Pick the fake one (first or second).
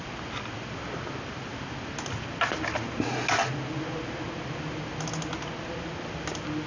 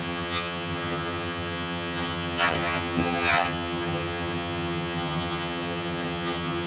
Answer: second